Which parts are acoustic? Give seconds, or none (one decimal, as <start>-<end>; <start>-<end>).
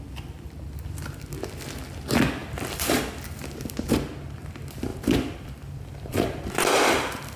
0.0-2.4; 3.0-4.9; 6.5-7.4